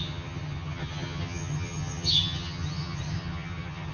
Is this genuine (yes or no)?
no